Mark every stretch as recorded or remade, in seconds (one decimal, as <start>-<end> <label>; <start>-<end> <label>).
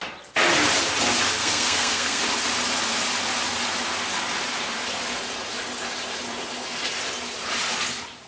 0.0-1.4 recorded; 1.4-2.2 remade; 2.2-8.3 recorded